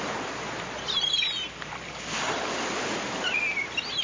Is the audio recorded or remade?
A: remade